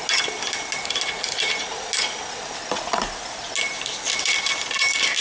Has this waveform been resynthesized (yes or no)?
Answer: no